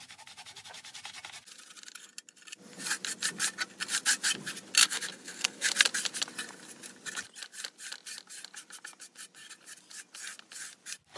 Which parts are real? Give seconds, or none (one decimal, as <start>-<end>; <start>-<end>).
0.0-4.8; 5.7-11.2